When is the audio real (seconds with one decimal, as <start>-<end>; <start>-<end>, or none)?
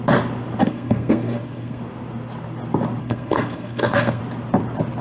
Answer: 0.0-0.6; 1.8-3.0; 4.2-5.0